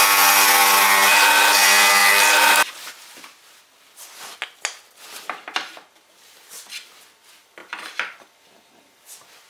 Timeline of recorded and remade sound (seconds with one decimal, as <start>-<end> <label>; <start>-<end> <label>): 0.0-9.5 recorded